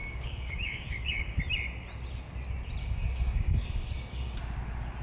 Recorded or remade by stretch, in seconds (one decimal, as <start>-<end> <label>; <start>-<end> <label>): 0.0-1.4 remade; 1.4-2.8 recorded; 2.8-4.4 remade; 4.4-5.0 recorded